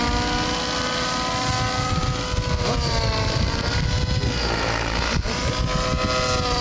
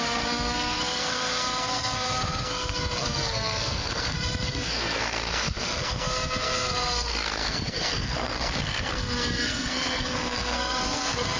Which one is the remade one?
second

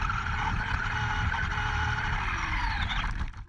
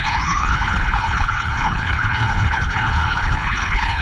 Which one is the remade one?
second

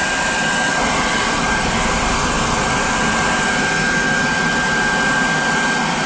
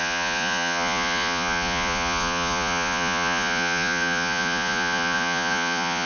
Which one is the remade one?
second